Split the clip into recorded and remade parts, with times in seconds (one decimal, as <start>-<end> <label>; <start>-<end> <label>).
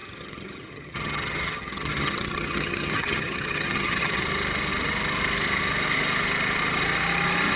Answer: 0.0-4.2 remade; 4.2-7.6 recorded